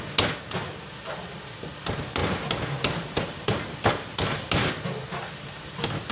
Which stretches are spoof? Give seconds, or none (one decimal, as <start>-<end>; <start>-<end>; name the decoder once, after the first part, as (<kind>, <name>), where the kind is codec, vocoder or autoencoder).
none